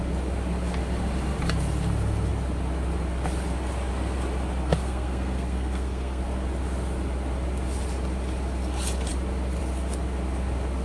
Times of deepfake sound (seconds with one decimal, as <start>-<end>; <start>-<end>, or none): 4.6-6.2